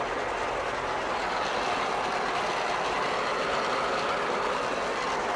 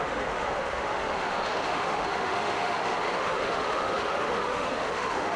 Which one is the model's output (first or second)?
second